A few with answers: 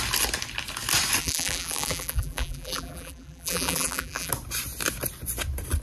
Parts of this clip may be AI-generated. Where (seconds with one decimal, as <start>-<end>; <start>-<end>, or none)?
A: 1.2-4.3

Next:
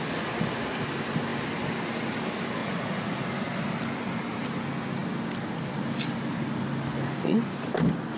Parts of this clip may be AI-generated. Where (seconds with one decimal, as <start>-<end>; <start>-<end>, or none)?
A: 2.6-3.3

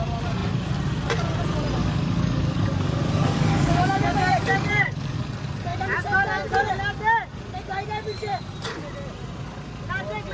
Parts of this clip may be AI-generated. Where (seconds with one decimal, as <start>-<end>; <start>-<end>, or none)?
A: 1.8-5.3

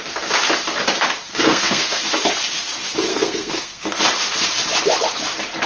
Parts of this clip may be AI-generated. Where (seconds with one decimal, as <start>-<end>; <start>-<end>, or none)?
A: 1.3-2.0; 3.1-4.0